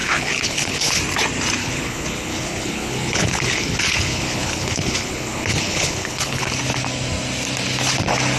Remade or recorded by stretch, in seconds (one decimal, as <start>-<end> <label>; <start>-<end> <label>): 0.0-1.0 remade; 1.0-1.6 recorded; 1.6-6.5 remade; 6.5-8.4 recorded